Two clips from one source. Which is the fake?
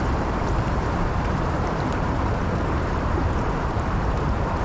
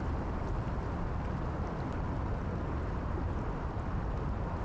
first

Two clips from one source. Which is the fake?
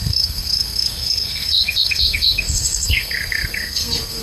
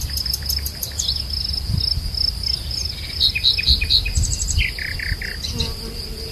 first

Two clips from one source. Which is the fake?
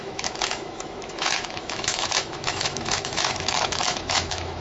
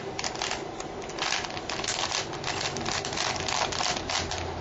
first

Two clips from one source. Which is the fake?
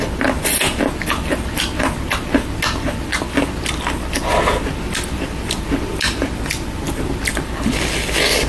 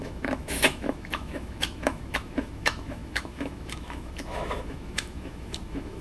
second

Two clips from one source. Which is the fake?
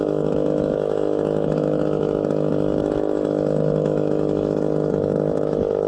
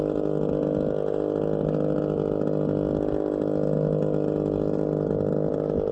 first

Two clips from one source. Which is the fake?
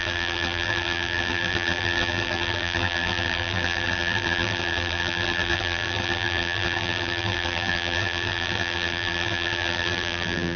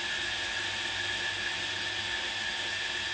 first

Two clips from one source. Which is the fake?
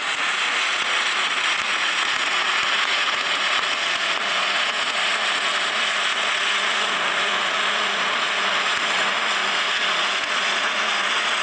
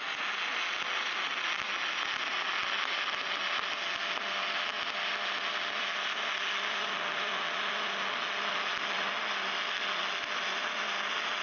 first